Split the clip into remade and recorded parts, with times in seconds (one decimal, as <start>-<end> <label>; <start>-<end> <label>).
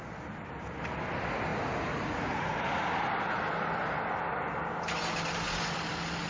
0.0-6.3 recorded